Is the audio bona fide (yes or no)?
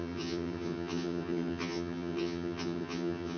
no